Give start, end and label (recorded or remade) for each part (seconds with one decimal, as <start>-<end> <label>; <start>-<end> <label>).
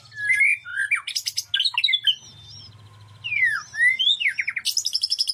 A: 0.0-5.3 recorded